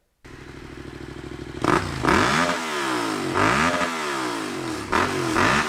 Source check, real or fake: real